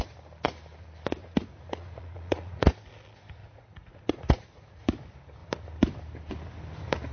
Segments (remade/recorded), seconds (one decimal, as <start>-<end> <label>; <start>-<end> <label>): 0.0-1.2 recorded; 1.2-2.7 remade; 2.7-3.4 recorded; 3.4-4.8 remade; 4.8-7.1 recorded